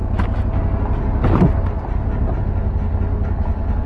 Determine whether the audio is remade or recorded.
recorded